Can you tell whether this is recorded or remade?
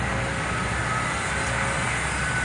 recorded